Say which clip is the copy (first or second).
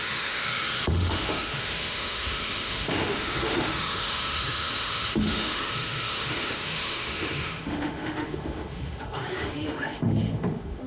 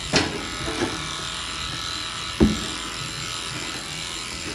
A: first